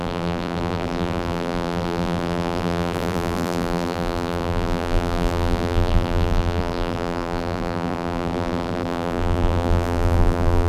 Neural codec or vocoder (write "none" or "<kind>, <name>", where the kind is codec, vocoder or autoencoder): vocoder, BigVGAN v2